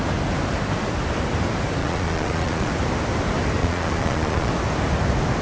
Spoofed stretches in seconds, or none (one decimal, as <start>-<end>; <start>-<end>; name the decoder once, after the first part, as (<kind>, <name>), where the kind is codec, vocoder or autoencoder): 1.8-2.7 (vocoder, Vocos); 3.6-4.5